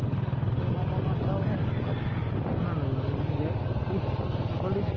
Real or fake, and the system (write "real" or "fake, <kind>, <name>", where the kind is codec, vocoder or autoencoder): real